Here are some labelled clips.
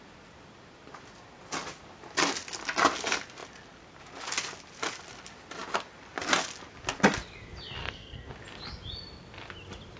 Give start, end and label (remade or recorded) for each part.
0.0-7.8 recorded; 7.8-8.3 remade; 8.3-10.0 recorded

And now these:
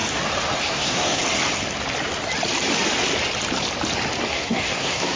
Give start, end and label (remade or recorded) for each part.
0.0-0.6 recorded; 0.6-1.2 remade; 1.2-4.3 recorded; 4.3-5.2 remade

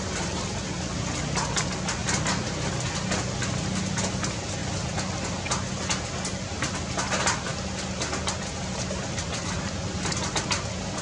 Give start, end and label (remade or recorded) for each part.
0.0-11.0 recorded

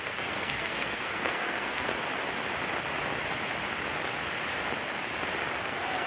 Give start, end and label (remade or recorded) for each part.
0.0-1.9 remade; 1.9-5.6 recorded; 5.6-6.1 remade

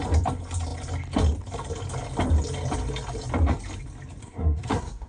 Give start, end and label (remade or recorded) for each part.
0.0-4.2 recorded; 4.2-5.1 remade

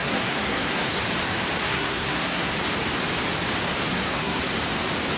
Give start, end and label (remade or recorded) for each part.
0.0-1.0 remade; 1.0-1.6 recorded; 1.6-2.5 remade; 2.5-3.9 recorded; 3.9-4.4 remade; 4.4-5.2 recorded

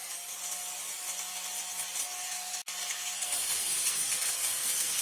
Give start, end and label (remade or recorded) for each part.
0.0-2.8 recorded; 2.8-5.0 remade

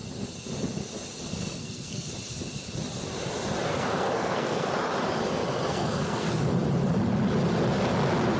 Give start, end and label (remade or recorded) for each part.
0.0-1.3 recorded; 1.3-2.1 remade; 2.1-3.7 recorded; 3.7-4.7 remade; 4.7-5.7 recorded; 5.7-6.4 remade; 6.4-8.4 recorded